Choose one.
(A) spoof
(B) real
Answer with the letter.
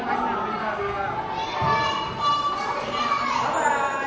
B